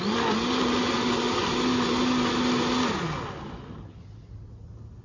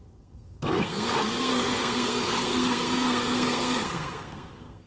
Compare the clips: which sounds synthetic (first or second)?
second